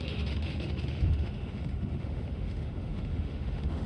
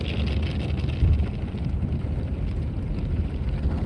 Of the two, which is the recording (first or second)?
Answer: second